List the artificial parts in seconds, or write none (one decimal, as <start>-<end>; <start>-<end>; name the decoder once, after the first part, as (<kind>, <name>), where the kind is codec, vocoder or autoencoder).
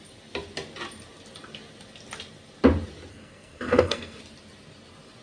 3.1-4.2 (codec, SNAC)